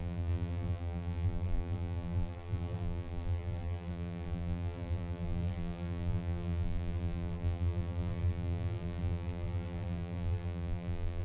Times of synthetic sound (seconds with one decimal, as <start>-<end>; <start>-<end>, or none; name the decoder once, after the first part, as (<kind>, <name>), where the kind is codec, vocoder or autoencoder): 0.0-11.2 (vocoder, BigVGAN v2)